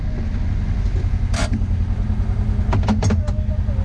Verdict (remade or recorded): recorded